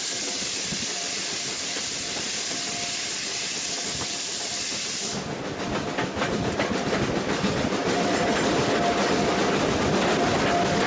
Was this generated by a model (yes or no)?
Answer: no